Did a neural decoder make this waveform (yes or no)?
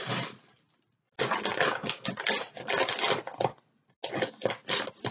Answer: no